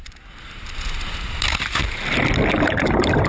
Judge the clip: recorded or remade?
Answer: recorded